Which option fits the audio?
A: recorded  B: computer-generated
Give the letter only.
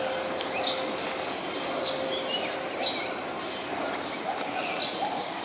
A